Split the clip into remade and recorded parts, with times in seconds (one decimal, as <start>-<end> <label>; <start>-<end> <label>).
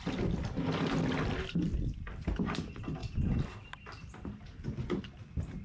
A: 0.0-5.6 recorded